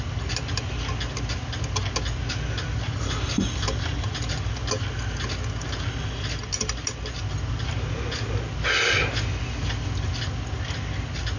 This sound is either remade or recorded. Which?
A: recorded